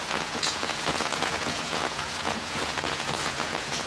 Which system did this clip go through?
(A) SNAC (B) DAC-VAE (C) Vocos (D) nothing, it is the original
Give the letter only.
C